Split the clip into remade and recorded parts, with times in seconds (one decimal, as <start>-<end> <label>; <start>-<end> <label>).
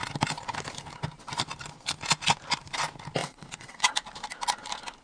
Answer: 0.0-3.2 recorded; 3.2-3.9 remade; 3.9-5.0 recorded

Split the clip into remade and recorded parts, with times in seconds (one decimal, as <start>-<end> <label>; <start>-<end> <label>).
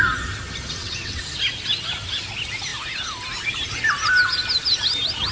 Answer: 0.0-0.8 recorded; 0.8-1.3 remade; 1.3-5.3 recorded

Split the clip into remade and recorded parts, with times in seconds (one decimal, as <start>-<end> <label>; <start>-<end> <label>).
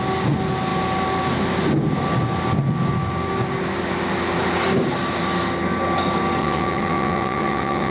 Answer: 0.0-6.4 recorded; 6.4-7.9 remade